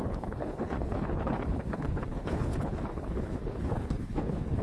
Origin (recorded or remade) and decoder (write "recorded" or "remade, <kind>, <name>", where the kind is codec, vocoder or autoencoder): remade, codec, HILCodec